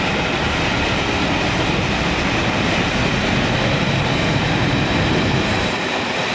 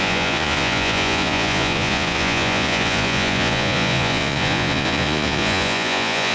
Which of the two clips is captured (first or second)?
first